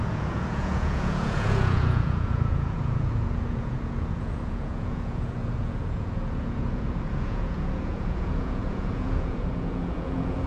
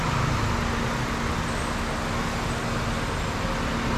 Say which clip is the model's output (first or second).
first